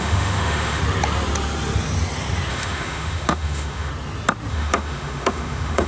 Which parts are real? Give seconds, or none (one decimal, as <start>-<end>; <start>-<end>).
0.8-2.5; 3.9-4.5